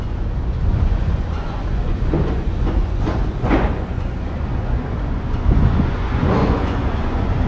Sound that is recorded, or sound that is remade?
remade